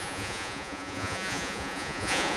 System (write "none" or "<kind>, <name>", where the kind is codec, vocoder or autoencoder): vocoder, Vocos